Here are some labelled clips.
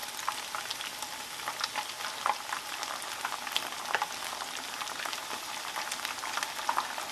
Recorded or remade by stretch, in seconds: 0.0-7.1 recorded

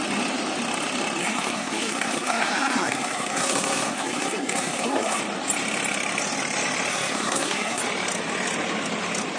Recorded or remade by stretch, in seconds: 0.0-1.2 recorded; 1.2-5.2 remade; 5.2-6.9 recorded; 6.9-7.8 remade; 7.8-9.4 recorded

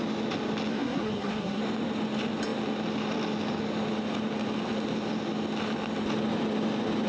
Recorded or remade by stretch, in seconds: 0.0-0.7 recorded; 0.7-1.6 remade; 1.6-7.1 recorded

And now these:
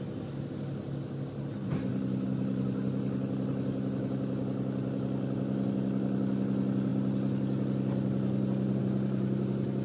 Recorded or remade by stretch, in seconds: 0.0-9.8 recorded